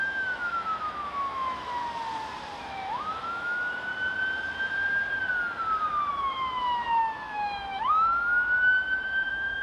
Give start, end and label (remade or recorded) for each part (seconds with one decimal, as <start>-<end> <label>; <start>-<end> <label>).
0.0-1.8 remade; 1.8-2.6 recorded; 2.6-3.9 remade; 3.9-6.1 recorded; 6.1-9.6 remade

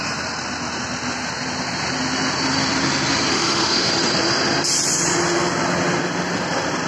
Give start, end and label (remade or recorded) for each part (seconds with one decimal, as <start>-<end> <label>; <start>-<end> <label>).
0.0-3.3 recorded; 3.3-3.9 remade; 3.9-6.9 recorded

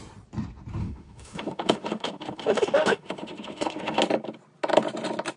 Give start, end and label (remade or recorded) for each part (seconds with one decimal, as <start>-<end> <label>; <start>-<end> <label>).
0.0-0.8 recorded; 0.8-4.0 remade; 4.0-5.4 recorded